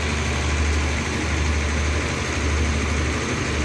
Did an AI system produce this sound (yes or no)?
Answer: no